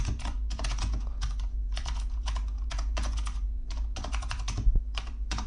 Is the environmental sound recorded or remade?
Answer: remade